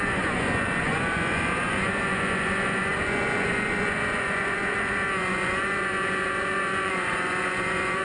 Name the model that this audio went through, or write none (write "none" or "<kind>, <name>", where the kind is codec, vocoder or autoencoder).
vocoder, Vocos